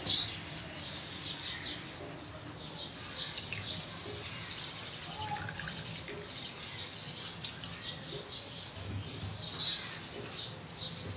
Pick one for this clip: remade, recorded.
recorded